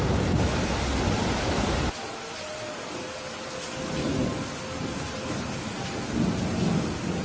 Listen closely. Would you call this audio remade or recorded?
recorded